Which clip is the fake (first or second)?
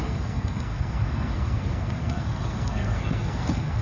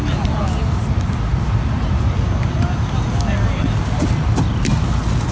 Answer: first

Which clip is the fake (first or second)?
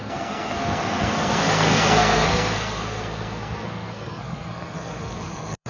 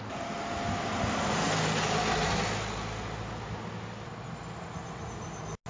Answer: first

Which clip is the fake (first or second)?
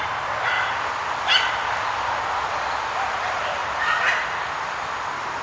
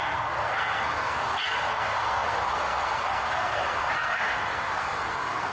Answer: second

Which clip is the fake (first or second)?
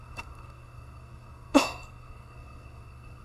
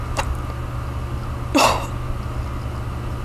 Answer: first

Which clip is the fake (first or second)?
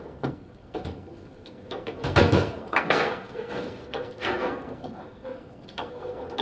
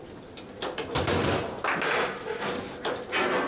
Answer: first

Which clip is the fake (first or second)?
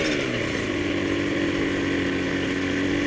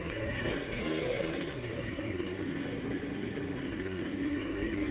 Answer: second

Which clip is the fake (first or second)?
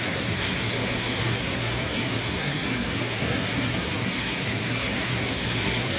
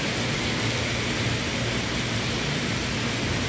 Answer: first